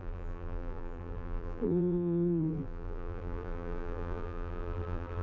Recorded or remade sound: remade